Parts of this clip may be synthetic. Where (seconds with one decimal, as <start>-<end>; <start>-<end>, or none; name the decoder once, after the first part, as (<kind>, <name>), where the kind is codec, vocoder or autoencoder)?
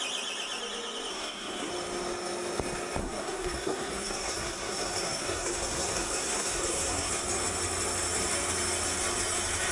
1.1-1.7 (codec, SNAC); 3.0-7.1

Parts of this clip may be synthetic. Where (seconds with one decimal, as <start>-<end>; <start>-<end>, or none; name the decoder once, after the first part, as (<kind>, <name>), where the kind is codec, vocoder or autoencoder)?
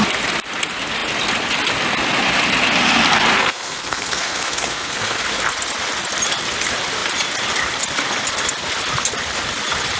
3.3-5.2 (codec, SNAC)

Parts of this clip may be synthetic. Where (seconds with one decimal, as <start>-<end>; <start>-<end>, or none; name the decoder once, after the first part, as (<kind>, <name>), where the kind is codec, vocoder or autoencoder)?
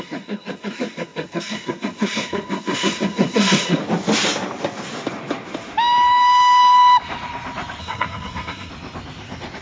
0.0-3.8 (codec, SNAC); 7.8-8.7